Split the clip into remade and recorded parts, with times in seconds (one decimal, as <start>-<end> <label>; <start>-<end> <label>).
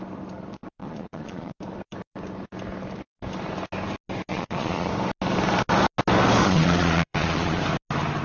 0.0-0.8 recorded; 0.8-1.6 remade; 1.6-4.3 recorded; 4.3-4.9 remade; 4.9-6.4 recorded; 6.4-7.6 remade; 7.6-8.2 recorded